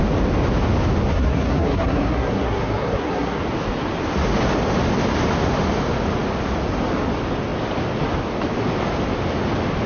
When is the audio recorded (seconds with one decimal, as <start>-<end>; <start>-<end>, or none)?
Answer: 0.0-1.1; 3.4-9.9